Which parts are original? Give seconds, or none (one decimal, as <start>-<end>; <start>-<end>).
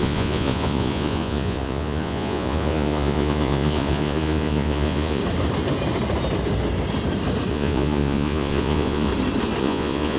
5.2-7.5; 9.1-9.6